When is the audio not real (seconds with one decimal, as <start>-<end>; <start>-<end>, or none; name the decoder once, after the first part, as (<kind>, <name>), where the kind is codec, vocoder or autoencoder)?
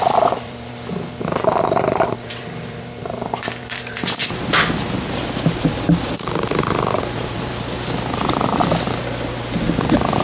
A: 0.0-8.7 (vocoder, BigVGAN v2)